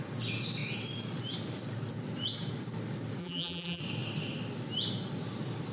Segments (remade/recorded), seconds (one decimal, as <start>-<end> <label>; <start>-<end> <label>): 0.0-3.2 recorded; 3.2-3.8 remade; 3.8-5.7 recorded